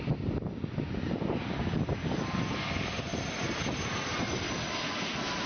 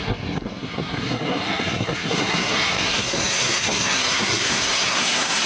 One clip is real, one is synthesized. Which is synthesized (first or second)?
second